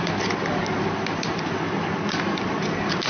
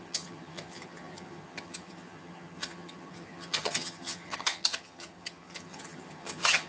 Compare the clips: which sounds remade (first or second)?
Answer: second